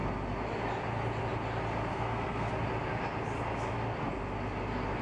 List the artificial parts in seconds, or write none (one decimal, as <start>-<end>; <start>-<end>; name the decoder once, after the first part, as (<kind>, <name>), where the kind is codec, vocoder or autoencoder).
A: 1.9-2.5 (codec, SNAC)